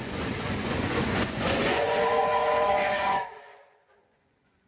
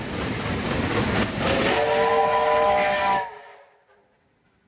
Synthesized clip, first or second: first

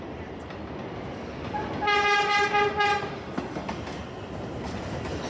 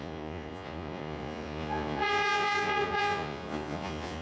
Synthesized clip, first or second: second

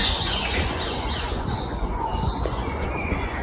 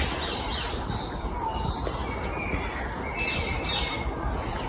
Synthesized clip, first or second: first